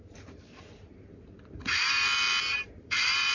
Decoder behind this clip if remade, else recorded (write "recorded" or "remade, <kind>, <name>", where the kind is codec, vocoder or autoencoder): remade, vocoder, BigVGAN v2